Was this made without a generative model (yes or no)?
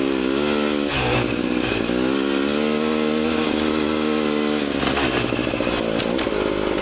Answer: yes